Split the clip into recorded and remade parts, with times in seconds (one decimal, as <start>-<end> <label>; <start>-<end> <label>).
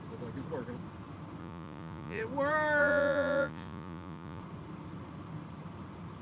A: 0.0-1.4 recorded; 1.4-2.2 remade; 2.2-2.8 recorded; 2.8-4.4 remade; 4.4-6.2 recorded